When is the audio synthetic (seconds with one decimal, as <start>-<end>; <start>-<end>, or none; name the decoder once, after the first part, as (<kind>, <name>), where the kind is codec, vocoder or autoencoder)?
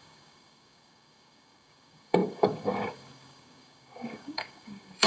0.0-5.1 (codec, DAC)